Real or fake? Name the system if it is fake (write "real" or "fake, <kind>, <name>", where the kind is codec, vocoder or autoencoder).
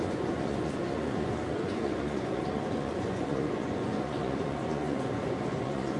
fake, vocoder, Vocos